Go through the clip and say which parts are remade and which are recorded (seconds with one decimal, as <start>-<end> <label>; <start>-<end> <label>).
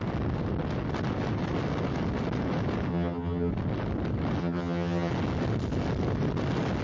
0.0-2.9 recorded; 2.9-3.5 remade; 3.5-4.4 recorded; 4.4-5.1 remade; 5.1-6.8 recorded